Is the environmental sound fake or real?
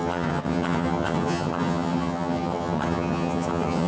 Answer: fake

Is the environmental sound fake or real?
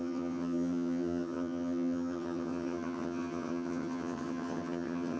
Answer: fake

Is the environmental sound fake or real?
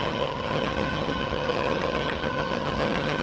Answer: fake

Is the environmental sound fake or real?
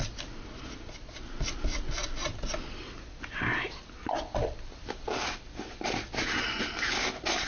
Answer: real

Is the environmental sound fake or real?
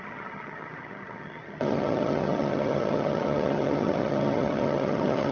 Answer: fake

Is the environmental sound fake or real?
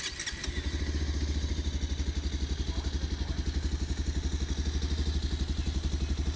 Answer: real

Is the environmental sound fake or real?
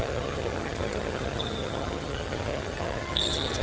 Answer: fake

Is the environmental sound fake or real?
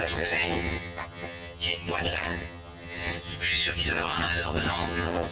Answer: fake